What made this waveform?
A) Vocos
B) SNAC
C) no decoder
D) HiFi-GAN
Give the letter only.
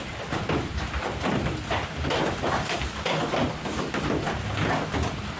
C